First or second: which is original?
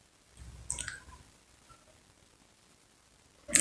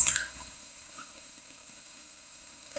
first